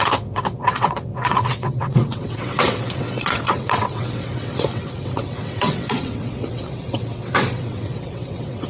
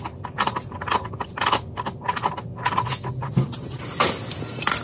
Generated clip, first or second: first